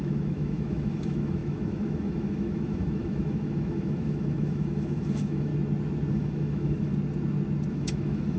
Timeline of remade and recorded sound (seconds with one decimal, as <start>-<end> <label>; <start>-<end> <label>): 0.0-5.5 remade; 5.5-6.1 recorded; 6.1-6.9 remade; 6.9-7.7 recorded; 7.7-8.4 remade